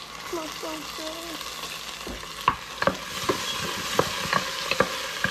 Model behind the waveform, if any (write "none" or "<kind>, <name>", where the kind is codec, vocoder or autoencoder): none